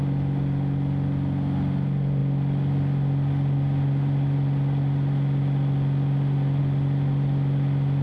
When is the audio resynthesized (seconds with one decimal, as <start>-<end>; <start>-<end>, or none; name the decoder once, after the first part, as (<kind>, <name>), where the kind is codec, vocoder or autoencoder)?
none